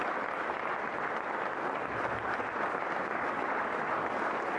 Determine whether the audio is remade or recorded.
recorded